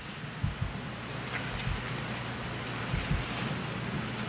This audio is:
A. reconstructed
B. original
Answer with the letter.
B